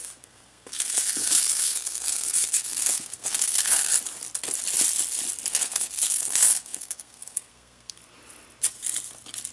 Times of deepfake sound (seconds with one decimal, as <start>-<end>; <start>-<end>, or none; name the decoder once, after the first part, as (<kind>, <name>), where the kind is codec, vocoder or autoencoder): 0.0-3.9 (codec, SNAC); 5.5-8.0